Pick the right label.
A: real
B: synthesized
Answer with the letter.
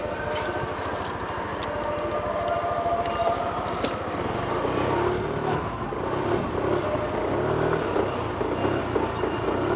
A